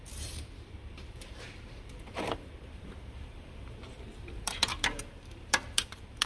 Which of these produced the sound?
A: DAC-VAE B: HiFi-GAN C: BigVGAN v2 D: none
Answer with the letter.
C